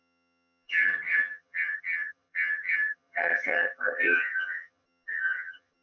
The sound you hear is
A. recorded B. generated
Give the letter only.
B